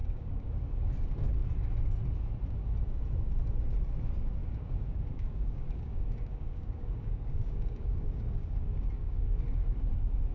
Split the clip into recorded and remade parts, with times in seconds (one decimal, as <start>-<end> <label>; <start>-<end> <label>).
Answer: 0.0-0.7 remade; 0.7-4.4 recorded; 4.4-9.4 remade; 9.4-10.3 recorded